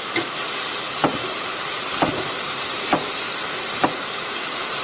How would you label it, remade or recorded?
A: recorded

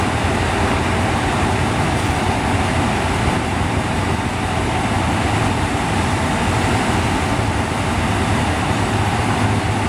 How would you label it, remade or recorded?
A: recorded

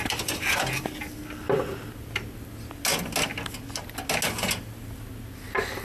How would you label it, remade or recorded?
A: recorded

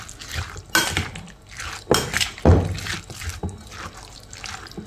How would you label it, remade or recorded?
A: recorded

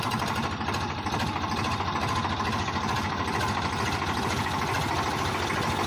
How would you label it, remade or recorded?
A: recorded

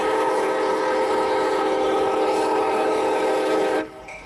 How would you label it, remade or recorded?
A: remade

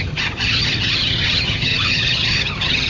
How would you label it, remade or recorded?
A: remade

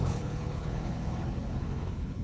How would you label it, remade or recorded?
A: remade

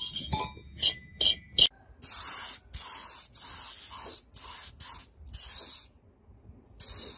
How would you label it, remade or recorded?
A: recorded